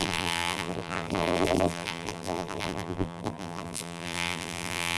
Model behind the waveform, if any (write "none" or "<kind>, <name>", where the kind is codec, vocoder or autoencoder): vocoder, BigVGAN v2